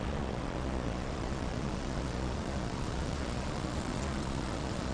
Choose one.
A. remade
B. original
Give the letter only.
A